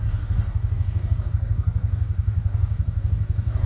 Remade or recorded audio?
remade